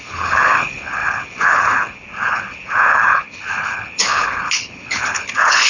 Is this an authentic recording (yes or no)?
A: no